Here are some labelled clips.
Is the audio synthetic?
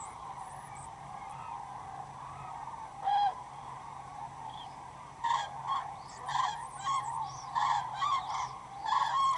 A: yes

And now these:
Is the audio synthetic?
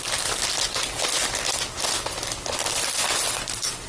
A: no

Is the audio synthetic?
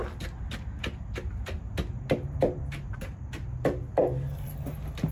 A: no